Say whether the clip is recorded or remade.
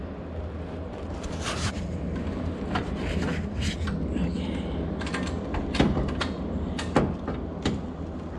recorded